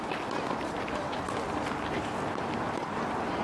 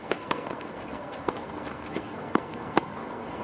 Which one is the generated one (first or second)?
second